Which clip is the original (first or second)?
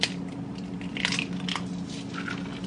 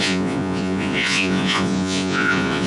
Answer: first